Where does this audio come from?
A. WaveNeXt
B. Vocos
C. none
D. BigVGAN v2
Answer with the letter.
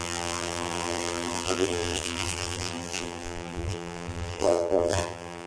D